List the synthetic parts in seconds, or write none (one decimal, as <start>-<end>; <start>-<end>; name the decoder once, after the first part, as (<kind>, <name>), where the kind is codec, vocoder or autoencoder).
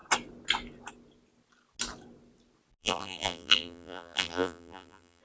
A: 2.8-5.2 (vocoder, BigVGAN v2)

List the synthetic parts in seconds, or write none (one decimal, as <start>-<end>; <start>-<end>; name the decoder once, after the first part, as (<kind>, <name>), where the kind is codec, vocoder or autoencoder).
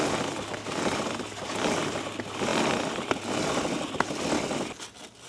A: none